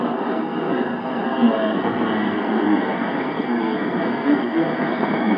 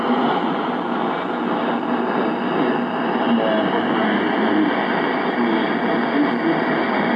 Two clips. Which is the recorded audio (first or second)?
second